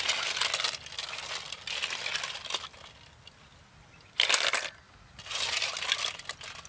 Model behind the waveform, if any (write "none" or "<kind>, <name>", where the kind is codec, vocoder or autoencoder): none